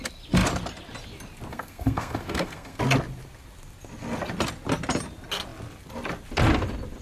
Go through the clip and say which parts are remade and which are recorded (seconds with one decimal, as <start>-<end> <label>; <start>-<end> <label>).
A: 0.0-1.5 recorded; 1.5-2.8 remade; 2.8-7.0 recorded